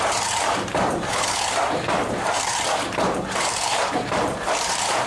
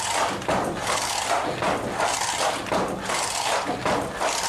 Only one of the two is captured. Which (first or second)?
second